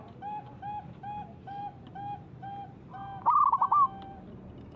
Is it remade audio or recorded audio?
recorded